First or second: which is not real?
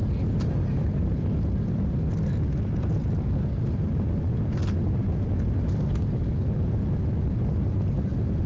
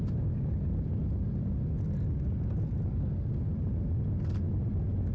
first